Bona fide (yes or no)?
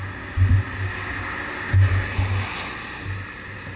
yes